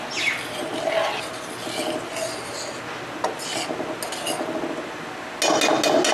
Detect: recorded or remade recorded